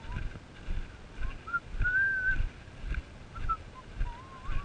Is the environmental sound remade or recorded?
recorded